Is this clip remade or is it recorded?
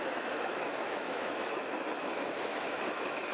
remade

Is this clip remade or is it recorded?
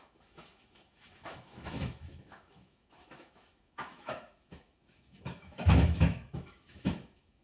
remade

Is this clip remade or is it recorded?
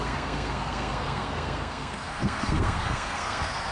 remade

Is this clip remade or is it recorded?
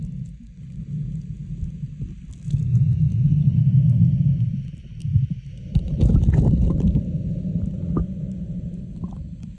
recorded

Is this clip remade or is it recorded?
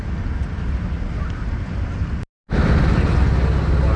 recorded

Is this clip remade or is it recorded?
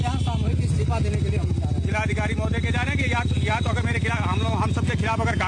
recorded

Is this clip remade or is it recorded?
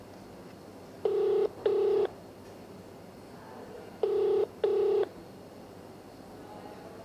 recorded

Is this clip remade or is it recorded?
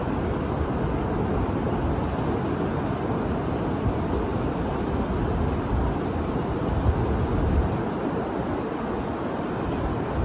recorded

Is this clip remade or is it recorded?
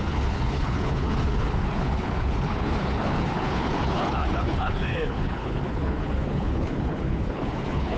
remade